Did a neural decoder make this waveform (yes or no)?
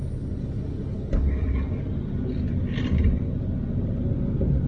no